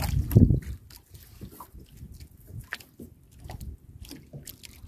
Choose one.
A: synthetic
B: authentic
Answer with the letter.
B